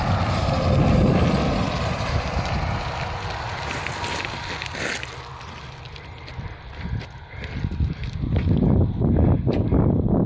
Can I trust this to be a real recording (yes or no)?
yes